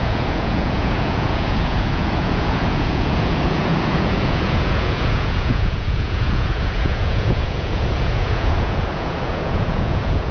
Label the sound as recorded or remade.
remade